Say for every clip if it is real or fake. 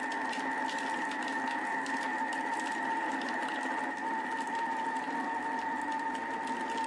real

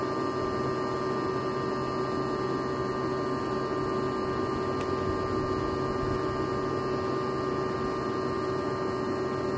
real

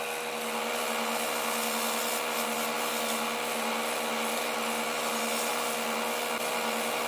real